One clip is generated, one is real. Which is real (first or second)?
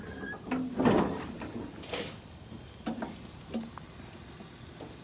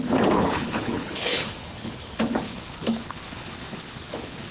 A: first